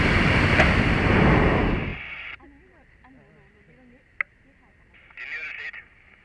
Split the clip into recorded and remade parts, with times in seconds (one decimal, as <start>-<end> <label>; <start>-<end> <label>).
0.0-6.2 recorded